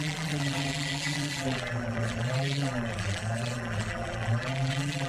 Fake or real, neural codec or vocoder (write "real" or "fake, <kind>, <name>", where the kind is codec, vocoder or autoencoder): fake, vocoder, BigVGAN v2